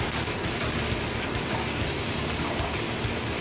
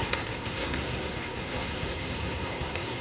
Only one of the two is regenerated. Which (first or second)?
second